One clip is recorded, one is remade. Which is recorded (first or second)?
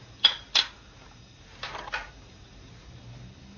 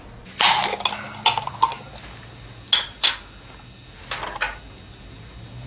second